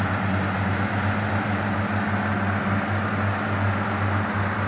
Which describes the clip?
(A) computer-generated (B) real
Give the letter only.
B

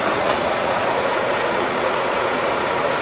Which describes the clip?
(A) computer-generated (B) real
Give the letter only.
A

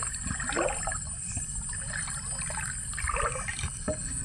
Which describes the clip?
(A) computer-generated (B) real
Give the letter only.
B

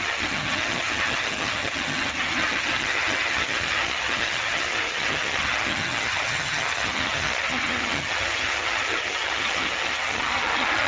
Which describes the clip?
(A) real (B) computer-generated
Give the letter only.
B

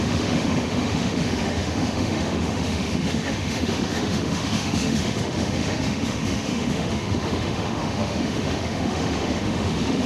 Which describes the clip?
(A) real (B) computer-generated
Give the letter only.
B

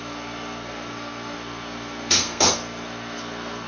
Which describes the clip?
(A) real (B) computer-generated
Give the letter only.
B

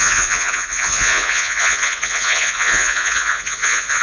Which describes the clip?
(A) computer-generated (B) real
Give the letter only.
A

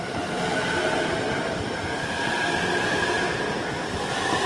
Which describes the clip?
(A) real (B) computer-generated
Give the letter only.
A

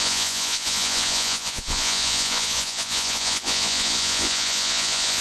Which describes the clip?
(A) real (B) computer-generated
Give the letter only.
B